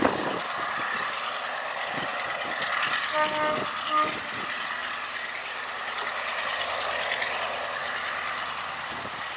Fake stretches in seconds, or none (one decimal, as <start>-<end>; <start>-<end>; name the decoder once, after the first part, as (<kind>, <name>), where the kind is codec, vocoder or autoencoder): none